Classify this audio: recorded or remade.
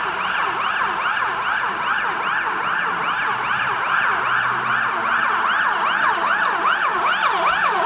recorded